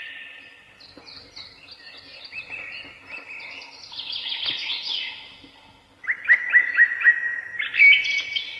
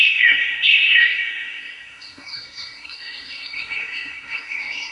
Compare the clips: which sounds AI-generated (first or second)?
second